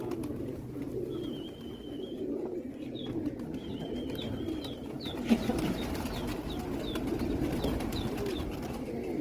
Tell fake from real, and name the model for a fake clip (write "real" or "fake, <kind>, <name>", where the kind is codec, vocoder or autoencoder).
real